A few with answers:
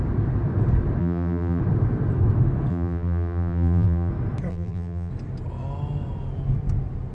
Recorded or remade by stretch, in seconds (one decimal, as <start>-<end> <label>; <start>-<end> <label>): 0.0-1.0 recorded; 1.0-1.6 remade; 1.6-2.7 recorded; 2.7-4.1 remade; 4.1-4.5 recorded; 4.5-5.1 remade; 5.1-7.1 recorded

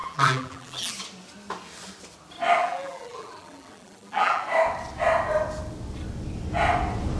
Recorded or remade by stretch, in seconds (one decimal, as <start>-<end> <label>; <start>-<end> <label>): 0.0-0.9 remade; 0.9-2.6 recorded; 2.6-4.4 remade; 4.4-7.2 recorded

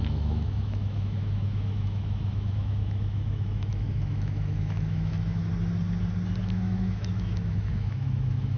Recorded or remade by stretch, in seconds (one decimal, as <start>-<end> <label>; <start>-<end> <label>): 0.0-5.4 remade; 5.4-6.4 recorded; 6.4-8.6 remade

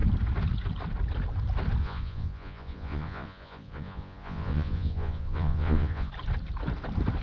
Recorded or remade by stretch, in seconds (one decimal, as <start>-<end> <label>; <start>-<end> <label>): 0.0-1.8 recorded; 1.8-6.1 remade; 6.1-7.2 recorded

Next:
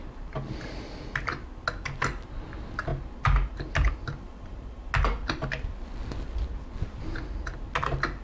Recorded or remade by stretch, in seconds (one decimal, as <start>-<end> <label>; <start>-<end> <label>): 0.0-8.2 recorded

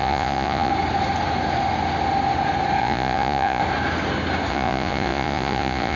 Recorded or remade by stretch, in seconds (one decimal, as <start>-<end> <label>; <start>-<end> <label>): 0.0-0.7 remade; 0.7-2.8 recorded; 2.8-3.6 remade; 3.6-4.5 recorded; 4.5-6.0 remade

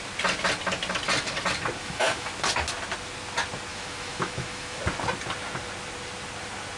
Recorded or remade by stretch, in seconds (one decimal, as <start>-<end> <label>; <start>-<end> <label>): 0.0-1.8 recorded; 1.8-2.3 remade; 2.3-3.7 recorded; 3.7-4.8 remade; 4.8-6.8 recorded